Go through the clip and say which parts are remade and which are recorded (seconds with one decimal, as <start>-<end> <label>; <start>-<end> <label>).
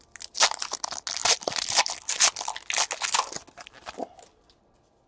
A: 0.0-5.1 recorded